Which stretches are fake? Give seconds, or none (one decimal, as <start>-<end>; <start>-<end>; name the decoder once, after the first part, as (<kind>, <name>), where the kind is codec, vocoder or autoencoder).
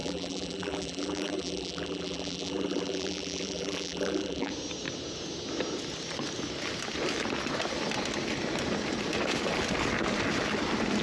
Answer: 0.0-4.5 (vocoder, BigVGAN v2)